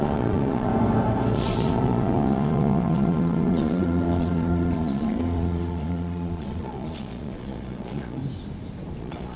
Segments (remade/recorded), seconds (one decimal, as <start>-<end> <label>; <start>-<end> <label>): 0.0-0.7 remade; 0.7-1.3 recorded; 1.3-8.2 remade; 8.2-9.0 recorded; 9.0-9.4 remade